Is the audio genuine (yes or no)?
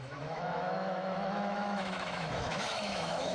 no